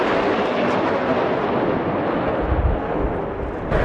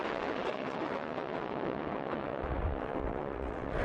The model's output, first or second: second